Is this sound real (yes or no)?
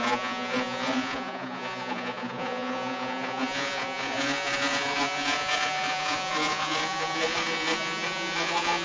no